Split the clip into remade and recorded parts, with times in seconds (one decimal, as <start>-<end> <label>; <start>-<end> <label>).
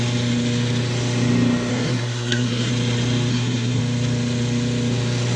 0.0-1.7 recorded; 1.7-2.7 remade; 2.7-3.3 recorded; 3.3-3.8 remade; 3.8-5.4 recorded